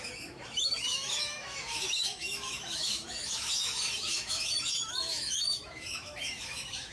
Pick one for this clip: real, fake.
fake